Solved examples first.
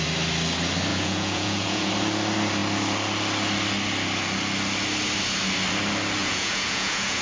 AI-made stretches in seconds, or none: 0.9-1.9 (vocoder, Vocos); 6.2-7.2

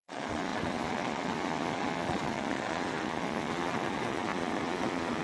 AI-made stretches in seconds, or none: 0.0-5.2 (vocoder, Vocos)

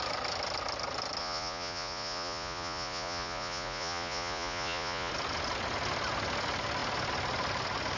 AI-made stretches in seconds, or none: 1.2-5.1 (vocoder, Vocos)

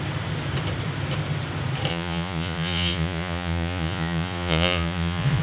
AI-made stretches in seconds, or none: 1.9-5.4 (vocoder, Vocos)

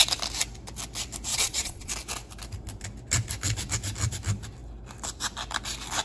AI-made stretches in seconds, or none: 1.3-1.9 (vocoder, Vocos)

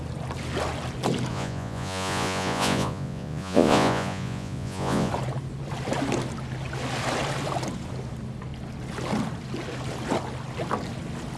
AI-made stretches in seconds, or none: 1.3-5.1 (vocoder, Vocos)

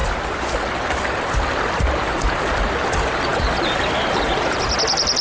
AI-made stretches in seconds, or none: none

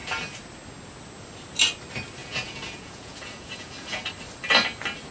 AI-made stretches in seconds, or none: 2.2-4.1 (vocoder, Vocos)